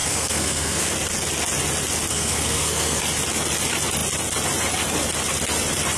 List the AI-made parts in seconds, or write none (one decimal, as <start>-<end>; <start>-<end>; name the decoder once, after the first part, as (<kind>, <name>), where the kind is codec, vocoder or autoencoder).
0.0-0.9 (codec, SNAC); 2.1-3.0